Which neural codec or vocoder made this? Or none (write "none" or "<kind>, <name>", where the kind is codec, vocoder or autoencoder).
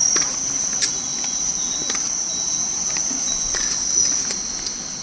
none